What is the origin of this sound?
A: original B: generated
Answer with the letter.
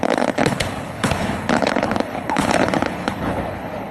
B